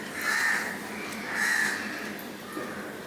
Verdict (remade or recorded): recorded